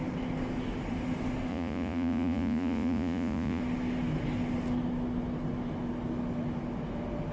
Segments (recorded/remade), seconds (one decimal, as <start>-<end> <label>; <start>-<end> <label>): 0.0-1.5 recorded; 1.5-3.6 remade; 3.6-7.3 recorded